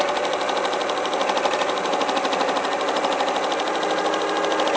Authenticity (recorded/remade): recorded